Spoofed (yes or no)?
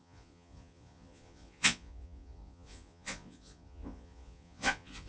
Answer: yes